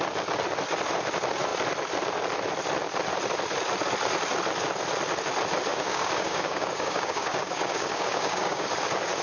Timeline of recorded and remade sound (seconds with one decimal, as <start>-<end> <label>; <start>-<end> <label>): 0.0-5.7 recorded; 5.7-8.7 remade; 8.7-9.2 recorded